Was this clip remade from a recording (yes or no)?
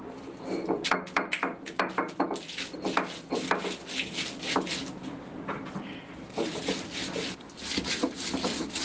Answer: no